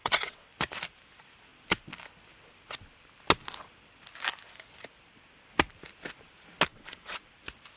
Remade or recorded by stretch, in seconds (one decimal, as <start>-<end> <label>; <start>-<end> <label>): 0.0-0.5 remade; 0.5-6.7 recorded; 6.7-7.2 remade; 7.2-7.8 recorded